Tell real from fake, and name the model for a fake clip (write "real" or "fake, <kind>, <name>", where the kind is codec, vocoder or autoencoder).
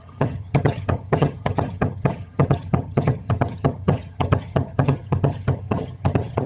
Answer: fake, vocoder, HiFi-GAN